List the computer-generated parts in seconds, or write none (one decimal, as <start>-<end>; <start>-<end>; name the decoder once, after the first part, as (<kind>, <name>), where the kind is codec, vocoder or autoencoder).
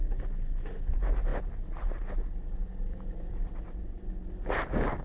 none